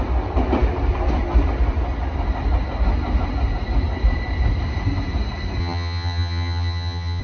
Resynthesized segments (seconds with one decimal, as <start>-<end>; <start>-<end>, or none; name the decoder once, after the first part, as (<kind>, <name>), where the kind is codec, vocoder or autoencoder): 5.6-7.2 (vocoder, HiFi-GAN)